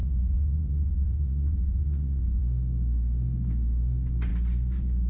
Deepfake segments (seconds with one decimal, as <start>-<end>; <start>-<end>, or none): 0.0-2.4